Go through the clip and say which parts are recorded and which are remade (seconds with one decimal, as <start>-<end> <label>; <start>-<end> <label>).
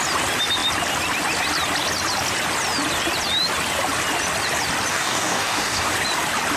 0.0-4.9 recorded; 4.9-5.9 remade; 5.9-6.6 recorded